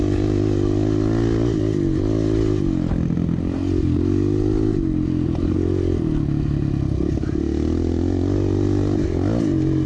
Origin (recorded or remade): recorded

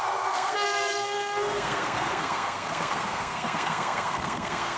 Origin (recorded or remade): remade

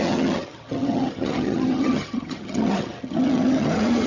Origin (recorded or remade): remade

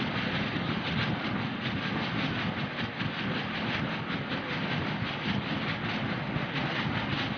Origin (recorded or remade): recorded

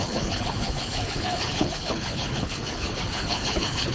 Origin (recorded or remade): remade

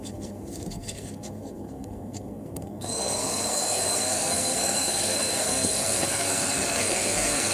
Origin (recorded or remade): remade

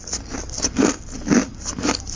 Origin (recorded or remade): recorded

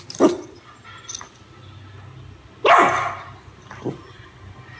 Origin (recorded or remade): recorded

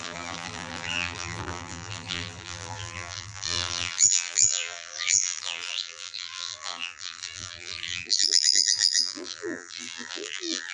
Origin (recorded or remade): remade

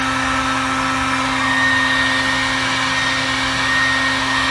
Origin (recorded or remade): recorded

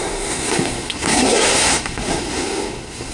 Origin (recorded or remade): remade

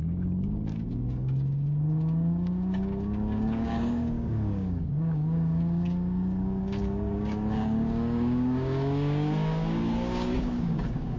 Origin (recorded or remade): remade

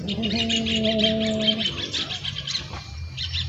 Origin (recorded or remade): recorded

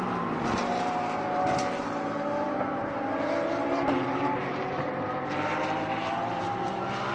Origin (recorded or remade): remade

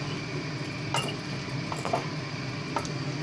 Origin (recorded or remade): recorded